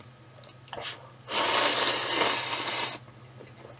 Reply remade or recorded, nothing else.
recorded